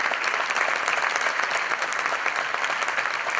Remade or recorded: recorded